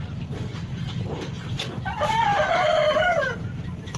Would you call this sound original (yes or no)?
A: no